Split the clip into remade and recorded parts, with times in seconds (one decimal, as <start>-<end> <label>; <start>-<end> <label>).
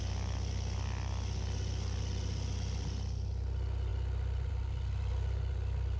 0.0-6.0 recorded